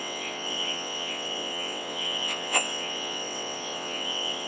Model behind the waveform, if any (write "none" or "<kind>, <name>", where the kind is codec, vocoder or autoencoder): vocoder, WaveNeXt